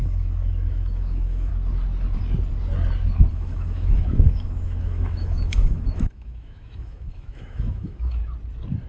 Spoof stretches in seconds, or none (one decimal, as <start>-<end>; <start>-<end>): 0.0-1.5; 3.3-8.2